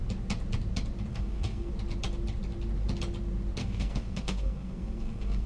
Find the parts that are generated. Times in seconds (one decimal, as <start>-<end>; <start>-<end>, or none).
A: 1.1-1.7; 3.6-5.5